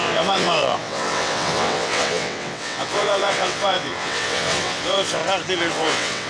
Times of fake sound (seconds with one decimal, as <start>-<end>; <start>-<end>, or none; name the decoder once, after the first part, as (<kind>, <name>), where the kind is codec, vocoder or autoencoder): 0.0-5.2 (vocoder, WaveNeXt); 5.7-6.3